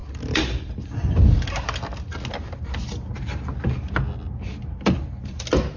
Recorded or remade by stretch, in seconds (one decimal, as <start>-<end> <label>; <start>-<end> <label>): 0.0-5.8 recorded

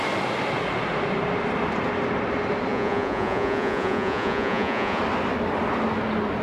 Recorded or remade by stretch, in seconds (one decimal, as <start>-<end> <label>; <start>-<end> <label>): 0.0-2.7 recorded; 2.7-5.0 remade; 5.0-6.4 recorded

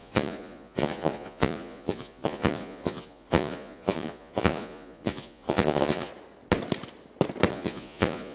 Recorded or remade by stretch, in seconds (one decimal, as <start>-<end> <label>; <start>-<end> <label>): 0.0-6.1 remade; 6.1-7.5 recorded; 7.5-8.3 remade

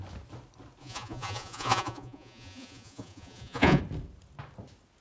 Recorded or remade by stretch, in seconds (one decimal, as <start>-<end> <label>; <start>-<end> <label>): 0.0-0.8 recorded; 0.8-3.8 remade; 3.8-5.0 recorded

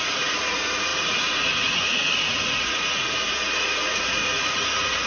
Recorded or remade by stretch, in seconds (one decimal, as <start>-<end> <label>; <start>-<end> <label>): 0.0-5.1 remade

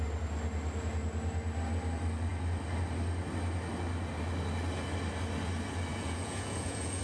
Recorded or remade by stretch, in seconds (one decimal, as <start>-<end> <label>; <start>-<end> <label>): 0.0-5.9 recorded; 5.9-7.0 remade

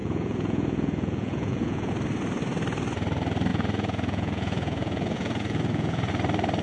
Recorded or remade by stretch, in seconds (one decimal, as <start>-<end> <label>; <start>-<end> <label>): 0.0-1.9 remade; 1.9-3.5 recorded; 3.5-6.1 remade; 6.1-6.6 recorded

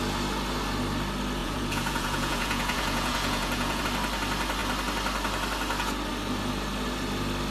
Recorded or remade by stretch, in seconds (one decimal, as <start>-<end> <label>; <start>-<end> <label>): 0.0-1.4 recorded; 1.4-3.8 remade; 3.8-7.5 recorded